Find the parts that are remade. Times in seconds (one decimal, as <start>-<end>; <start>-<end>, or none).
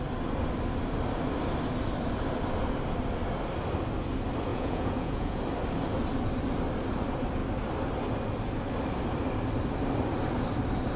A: 4.5-5.4